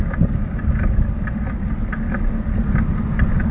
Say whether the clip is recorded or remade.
recorded